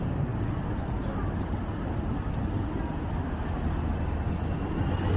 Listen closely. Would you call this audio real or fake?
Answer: real